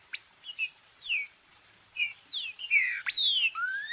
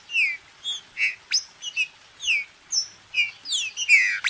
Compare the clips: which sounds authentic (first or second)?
second